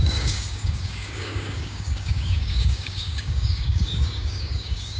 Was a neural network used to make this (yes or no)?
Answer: yes